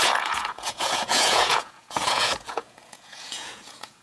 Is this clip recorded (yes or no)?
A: no